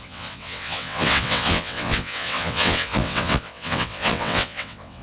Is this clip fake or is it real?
fake